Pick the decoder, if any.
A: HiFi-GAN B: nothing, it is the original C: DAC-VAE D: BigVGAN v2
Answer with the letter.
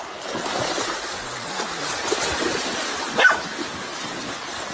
B